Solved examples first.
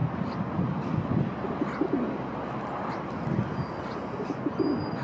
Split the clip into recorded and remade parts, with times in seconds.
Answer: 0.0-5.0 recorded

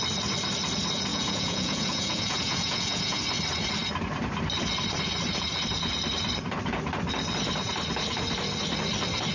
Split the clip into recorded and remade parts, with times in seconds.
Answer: 0.0-1.1 recorded; 1.1-3.2 remade; 3.2-9.3 recorded

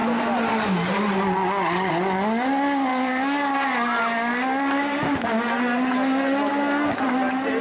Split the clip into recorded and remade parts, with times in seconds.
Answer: 0.0-7.6 recorded

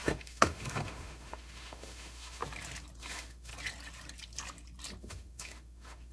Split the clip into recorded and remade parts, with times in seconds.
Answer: 0.0-2.4 remade; 2.4-3.0 recorded; 3.0-3.5 remade; 3.5-5.0 recorded; 5.0-6.1 remade

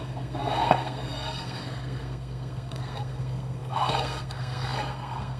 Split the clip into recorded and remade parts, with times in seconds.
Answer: 0.0-5.4 remade

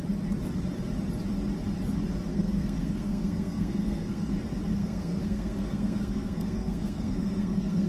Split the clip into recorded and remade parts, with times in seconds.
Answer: 0.0-2.3 recorded; 2.3-4.3 remade; 4.3-4.8 recorded; 4.8-7.9 remade